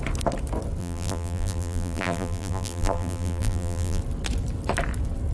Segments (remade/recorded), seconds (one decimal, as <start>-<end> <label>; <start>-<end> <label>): 0.0-0.8 recorded; 0.8-4.0 remade; 4.0-5.3 recorded